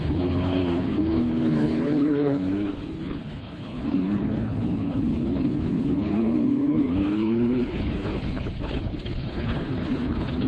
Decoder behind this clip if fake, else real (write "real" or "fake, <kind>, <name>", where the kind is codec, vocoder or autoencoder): fake, codec, HILCodec